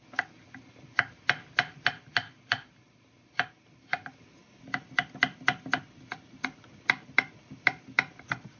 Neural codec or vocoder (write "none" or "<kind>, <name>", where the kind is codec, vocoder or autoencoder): none